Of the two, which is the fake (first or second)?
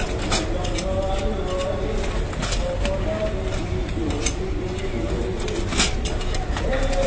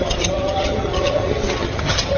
second